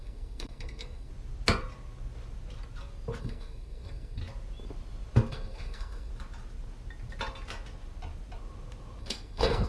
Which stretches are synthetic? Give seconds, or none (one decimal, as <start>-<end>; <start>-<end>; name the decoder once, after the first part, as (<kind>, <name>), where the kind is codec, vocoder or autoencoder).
0.0-1.1 (codec, SNAC); 3.2-4.2; 5.3-6.1; 9.0-9.7